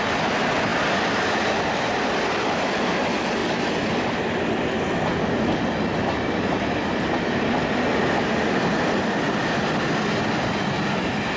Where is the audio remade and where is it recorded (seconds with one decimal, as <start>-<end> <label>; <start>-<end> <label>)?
0.0-11.4 recorded